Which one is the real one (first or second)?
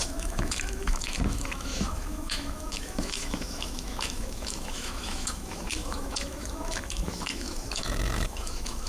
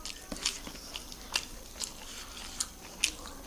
second